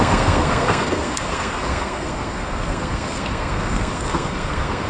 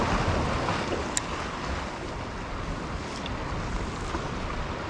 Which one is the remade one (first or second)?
first